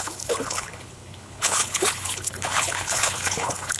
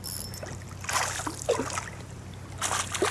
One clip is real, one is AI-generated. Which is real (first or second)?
second